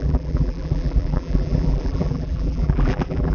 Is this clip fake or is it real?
fake